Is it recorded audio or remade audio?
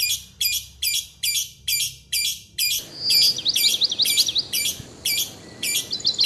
recorded